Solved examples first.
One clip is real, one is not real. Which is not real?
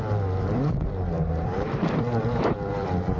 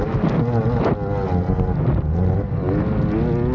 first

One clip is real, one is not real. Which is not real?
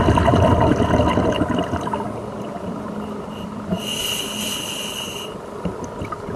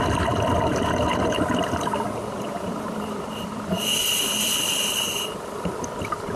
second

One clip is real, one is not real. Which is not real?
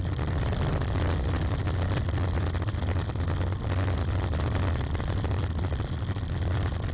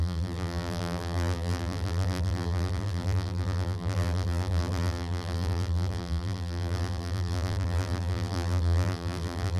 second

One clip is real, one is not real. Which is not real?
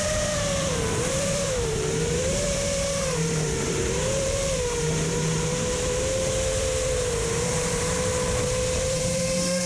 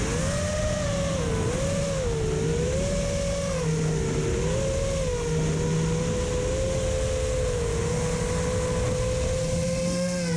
first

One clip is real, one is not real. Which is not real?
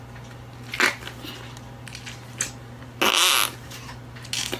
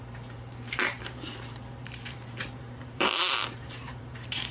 second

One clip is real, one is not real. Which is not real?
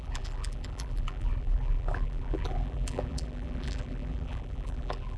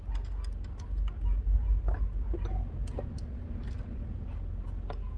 first